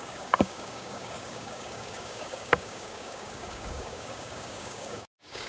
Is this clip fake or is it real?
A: fake